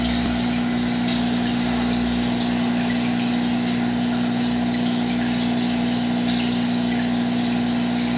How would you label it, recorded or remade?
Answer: recorded